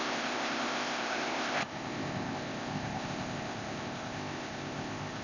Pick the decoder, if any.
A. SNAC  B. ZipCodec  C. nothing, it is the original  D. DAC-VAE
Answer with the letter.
B